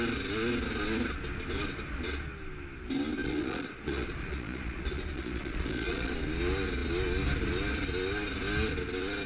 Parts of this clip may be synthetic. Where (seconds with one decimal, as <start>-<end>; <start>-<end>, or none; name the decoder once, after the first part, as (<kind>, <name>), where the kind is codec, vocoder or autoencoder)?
3.2-6.1 (vocoder, Vocos)